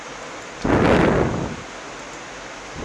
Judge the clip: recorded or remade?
recorded